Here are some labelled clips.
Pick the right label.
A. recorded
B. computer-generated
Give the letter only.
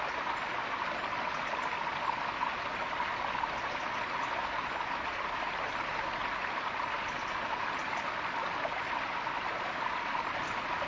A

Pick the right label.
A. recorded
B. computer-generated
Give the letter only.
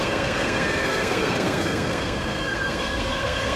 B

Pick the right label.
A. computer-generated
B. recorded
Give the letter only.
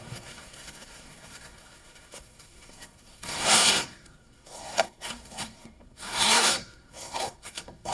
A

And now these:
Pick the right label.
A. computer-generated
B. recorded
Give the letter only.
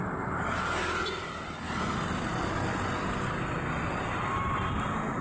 B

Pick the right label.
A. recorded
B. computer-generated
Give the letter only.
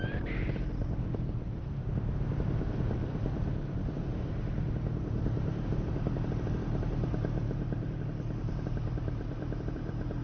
A